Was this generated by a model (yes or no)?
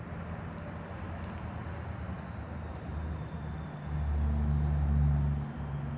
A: no